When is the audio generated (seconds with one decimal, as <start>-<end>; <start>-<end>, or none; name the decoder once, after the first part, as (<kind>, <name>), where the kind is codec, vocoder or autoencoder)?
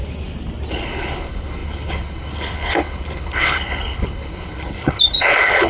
0.7-5.7 (codec, HILCodec)